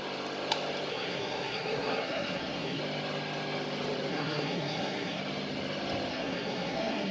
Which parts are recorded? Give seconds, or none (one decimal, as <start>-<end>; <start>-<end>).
0.0-0.9; 2.8-4.1; 5.2-6.1